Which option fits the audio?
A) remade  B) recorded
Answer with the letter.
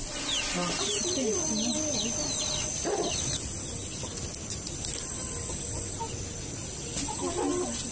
B